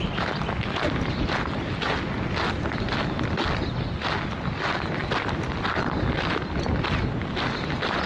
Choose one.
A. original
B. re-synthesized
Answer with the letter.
A